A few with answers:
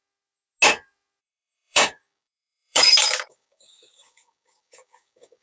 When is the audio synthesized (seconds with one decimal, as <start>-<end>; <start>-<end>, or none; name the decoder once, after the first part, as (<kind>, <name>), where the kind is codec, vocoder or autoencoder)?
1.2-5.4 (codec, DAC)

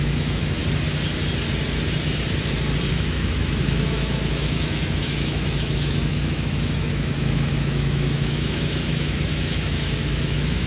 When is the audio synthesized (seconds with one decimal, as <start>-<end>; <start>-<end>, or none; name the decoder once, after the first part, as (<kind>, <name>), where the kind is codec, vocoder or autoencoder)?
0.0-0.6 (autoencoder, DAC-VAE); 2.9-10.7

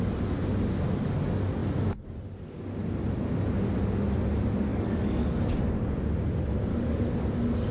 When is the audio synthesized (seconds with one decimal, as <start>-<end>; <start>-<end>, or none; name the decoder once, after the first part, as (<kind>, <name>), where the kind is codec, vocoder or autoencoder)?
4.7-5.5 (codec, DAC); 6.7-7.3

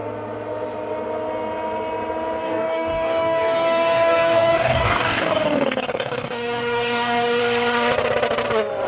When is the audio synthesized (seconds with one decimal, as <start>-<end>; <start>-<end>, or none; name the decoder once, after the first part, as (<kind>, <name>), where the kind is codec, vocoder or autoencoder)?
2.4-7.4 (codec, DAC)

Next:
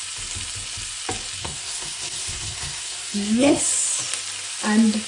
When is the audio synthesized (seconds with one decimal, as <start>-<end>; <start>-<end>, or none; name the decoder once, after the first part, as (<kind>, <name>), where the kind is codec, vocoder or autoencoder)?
1.4-3.6 (codec, SNAC)